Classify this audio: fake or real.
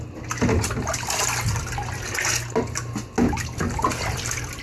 real